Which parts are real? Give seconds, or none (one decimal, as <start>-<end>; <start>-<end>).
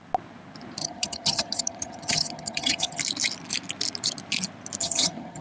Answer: 0.0-0.8; 3.0-4.8